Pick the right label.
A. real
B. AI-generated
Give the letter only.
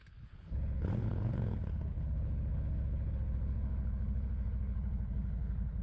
B